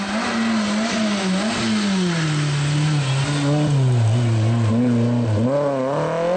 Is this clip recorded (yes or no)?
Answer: yes